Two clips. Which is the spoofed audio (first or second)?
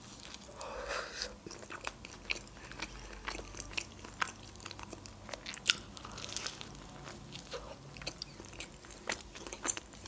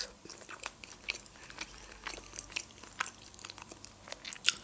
second